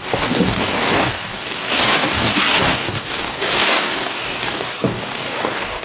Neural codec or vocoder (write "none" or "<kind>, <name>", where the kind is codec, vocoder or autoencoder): codec, DAC